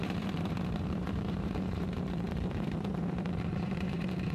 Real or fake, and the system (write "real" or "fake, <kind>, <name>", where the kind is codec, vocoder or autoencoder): fake, vocoder, BigVGAN v2